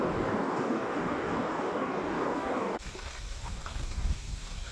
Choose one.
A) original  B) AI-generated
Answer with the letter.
B